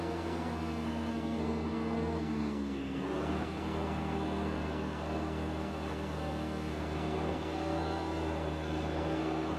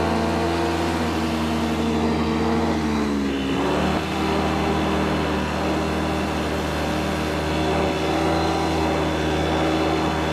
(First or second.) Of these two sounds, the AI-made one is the first